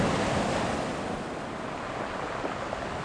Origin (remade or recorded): recorded